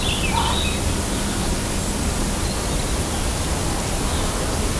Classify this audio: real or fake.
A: real